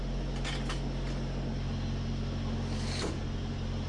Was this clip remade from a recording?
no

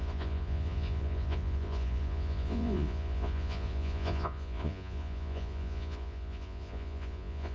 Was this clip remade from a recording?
yes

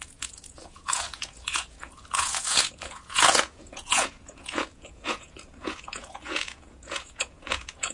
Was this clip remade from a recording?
yes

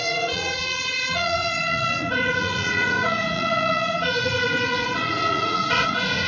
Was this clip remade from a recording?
yes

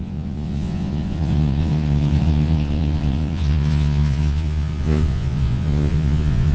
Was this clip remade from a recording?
yes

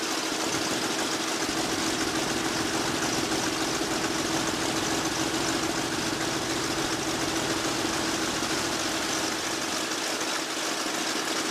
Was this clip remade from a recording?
no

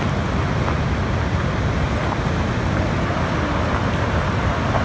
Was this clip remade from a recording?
no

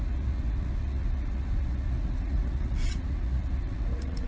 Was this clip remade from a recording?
yes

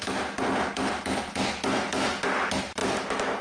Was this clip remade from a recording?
no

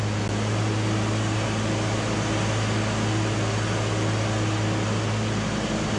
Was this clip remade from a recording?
no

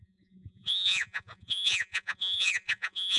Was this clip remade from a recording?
yes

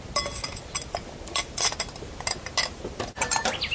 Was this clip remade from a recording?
no